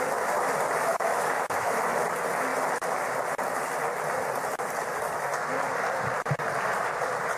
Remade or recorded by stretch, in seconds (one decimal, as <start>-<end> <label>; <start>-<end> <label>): 0.0-0.9 recorded; 0.9-1.8 remade; 1.8-7.4 recorded